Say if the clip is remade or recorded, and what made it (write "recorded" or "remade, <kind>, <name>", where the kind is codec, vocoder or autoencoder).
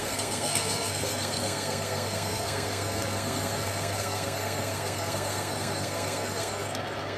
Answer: remade, codec, SNAC